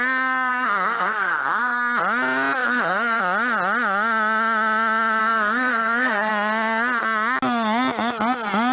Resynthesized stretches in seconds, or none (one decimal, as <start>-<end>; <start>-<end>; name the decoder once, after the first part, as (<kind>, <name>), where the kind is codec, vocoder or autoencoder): 0.5-2.0 (codec, SNAC); 2.6-3.2; 5.2-6.3

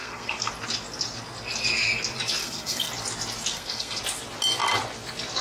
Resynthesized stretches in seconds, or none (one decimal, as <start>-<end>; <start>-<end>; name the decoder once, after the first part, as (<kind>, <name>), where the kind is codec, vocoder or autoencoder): 0.0-0.5 (codec, SNAC); 2.4-2.9; 3.5-4.0

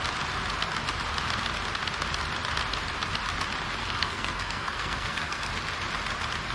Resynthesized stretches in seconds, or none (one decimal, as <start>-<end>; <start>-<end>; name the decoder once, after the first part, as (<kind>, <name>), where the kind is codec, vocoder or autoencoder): 3.8-5.5 (codec, SNAC)

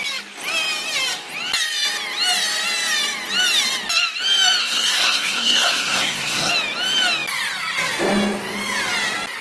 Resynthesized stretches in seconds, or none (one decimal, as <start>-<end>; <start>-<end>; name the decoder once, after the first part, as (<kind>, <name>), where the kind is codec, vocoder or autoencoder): 4.6-6.5 (codec, SNAC)

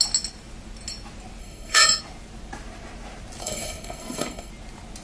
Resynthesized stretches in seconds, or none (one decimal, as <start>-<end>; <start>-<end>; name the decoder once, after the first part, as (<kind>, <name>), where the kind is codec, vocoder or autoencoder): 1.4-2.0 (codec, SNAC); 3.4-4.5

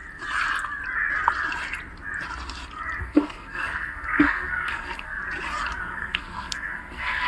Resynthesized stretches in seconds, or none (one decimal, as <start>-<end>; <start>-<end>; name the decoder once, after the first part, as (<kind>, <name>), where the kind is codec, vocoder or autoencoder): 3.0-5.2 (codec, SNAC); 5.8-7.3

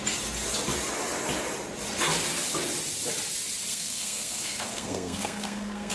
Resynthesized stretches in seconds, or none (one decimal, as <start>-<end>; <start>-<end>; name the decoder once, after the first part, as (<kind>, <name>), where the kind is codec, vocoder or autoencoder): 3.7-5.9 (codec, SNAC)

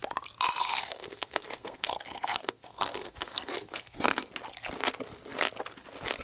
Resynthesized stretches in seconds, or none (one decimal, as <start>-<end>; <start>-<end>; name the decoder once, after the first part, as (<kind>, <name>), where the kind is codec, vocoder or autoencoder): 0.6-4.3 (codec, SNAC)